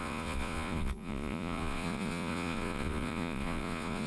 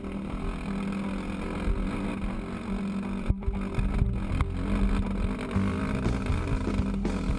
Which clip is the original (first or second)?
second